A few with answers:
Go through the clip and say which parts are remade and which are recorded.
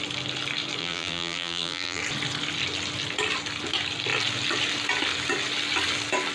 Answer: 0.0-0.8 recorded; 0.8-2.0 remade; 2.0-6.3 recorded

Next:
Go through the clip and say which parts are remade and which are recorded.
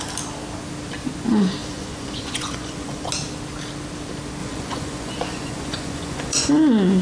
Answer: 0.0-1.6 recorded; 1.6-3.0 remade; 3.0-4.4 recorded; 4.4-6.5 remade; 6.5-7.0 recorded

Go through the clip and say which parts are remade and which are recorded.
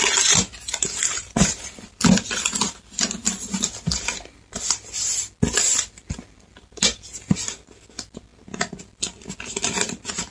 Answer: 0.0-1.1 recorded; 1.1-2.0 remade; 2.0-3.2 recorded; 3.2-4.6 remade; 4.6-10.3 recorded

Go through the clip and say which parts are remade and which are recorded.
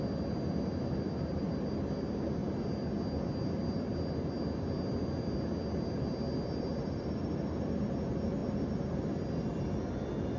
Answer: 0.0-10.4 recorded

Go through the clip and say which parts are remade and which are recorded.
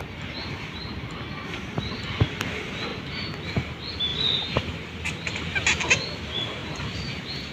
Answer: 0.0-4.1 recorded; 4.1-5.4 remade; 5.4-7.5 recorded